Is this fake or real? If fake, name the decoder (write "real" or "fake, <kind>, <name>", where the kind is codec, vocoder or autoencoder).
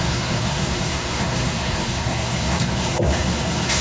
fake, codec, SNAC